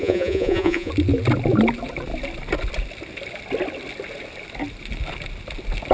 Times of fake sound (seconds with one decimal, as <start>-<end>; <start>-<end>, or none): 0.0-0.9